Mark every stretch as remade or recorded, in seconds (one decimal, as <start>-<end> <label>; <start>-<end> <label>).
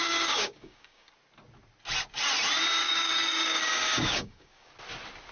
0.0-1.1 remade; 1.1-2.8 recorded; 2.8-4.7 remade; 4.7-5.3 recorded